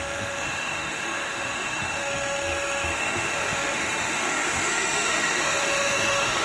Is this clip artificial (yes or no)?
yes